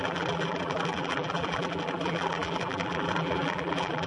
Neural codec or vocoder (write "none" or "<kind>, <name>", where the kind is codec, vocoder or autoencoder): vocoder, BigVGAN v2